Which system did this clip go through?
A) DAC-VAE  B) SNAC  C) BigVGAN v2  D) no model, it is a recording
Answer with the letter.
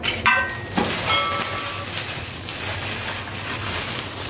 D